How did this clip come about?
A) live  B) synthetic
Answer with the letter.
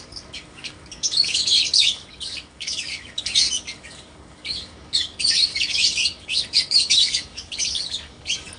B